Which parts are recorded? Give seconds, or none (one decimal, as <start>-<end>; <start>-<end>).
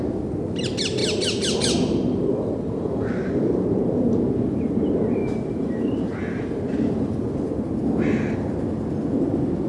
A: 0.0-5.2; 7.2-9.7